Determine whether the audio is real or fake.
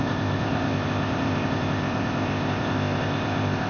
fake